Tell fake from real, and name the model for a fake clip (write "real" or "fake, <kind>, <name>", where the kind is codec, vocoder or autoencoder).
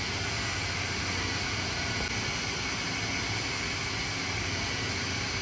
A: real